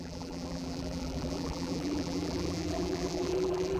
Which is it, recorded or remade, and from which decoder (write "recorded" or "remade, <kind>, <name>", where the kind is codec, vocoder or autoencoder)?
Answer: remade, vocoder, BigVGAN v2